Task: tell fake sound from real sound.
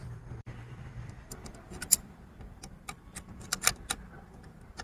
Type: fake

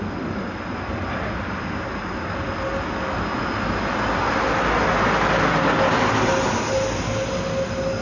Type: real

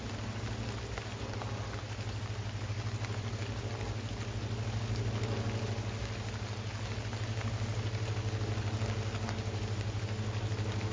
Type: real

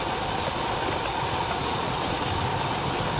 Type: real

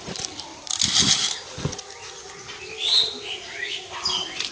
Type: real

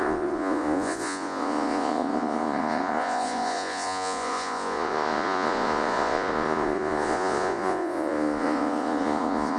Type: fake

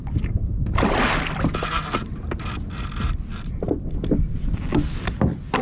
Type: real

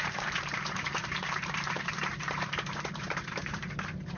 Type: fake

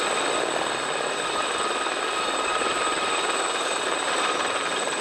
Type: real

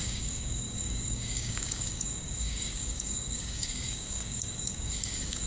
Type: fake